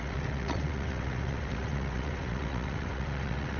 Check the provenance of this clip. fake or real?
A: fake